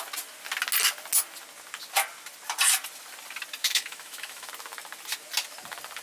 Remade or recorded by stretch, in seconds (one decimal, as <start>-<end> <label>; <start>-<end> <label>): 0.0-3.6 recorded; 3.6-4.5 remade; 4.5-6.0 recorded